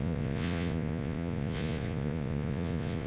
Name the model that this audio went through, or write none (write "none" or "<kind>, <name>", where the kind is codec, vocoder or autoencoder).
vocoder, Vocos